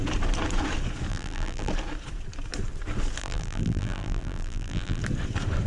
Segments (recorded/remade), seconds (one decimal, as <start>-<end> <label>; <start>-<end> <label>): 0.0-1.1 recorded; 1.1-1.7 remade; 1.7-3.2 recorded; 3.2-5.0 remade; 5.0-5.7 recorded